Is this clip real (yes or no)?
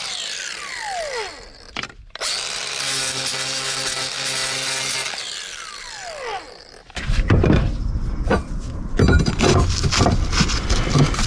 yes